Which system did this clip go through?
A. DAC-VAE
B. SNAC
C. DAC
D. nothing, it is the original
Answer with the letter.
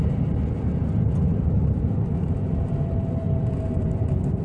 D